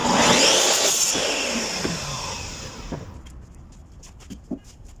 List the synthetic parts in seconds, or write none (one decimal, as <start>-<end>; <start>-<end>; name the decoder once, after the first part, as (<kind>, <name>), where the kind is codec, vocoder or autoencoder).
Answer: none